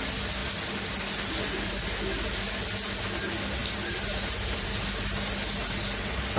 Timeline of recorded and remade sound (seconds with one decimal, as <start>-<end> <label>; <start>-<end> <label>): 0.0-3.6 recorded; 3.6-4.7 remade; 4.7-6.4 recorded